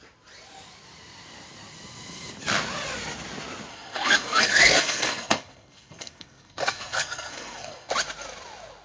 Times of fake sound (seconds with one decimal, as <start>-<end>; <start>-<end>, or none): 3.7-7.9